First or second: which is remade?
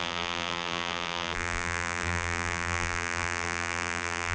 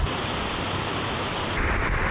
first